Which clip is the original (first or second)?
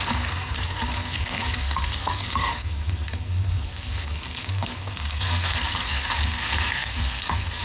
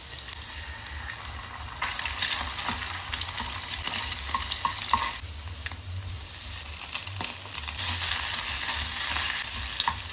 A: second